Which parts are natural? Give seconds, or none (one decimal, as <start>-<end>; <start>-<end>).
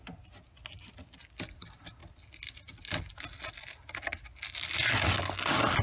0.0-5.8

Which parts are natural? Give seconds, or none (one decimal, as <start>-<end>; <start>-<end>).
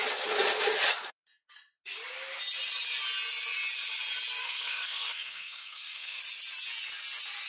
0.0-4.4; 6.2-7.5